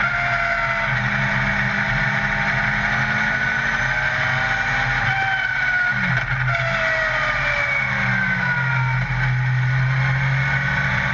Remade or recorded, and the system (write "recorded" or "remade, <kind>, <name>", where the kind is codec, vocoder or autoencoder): recorded